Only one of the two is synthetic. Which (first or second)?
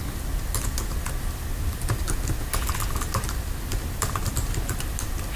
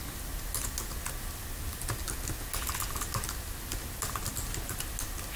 first